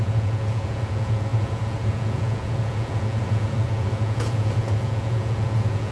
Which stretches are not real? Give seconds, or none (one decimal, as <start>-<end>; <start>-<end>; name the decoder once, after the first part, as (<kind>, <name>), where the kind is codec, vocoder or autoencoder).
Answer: 0.0-5.9 (vocoder, Vocos)